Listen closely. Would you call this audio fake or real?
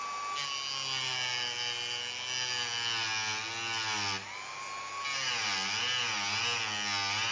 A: real